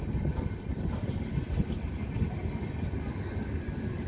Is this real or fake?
real